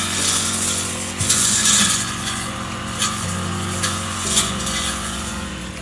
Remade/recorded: remade